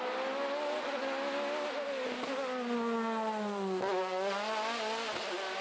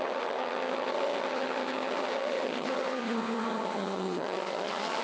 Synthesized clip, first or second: second